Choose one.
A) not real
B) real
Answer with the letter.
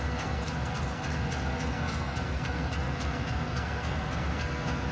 A